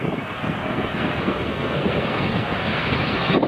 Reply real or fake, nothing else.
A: fake